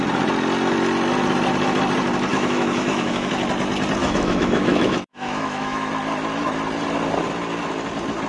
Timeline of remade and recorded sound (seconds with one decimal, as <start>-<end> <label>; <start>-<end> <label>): 0.0-2.3 recorded; 2.3-3.3 remade; 3.3-4.0 recorded; 4.0-5.9 remade; 5.9-8.3 recorded